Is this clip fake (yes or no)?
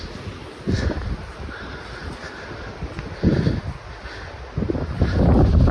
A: no